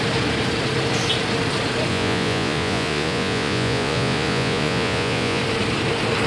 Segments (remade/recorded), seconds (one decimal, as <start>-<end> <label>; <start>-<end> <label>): 0.0-1.9 recorded; 1.9-5.4 remade; 5.4-6.3 recorded